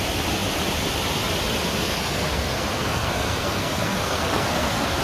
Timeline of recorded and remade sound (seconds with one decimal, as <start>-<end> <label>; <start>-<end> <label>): 0.0-1.7 recorded; 1.7-5.0 remade